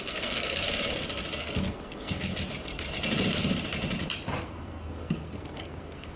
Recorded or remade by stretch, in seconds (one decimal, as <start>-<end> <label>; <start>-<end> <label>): 0.0-0.6 remade; 0.6-1.4 recorded; 1.4-2.3 remade; 2.3-4.4 recorded; 4.4-6.2 remade